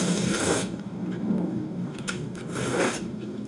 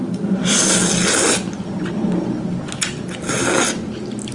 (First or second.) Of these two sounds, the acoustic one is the second